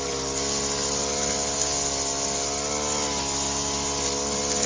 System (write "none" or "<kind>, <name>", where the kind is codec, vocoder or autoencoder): none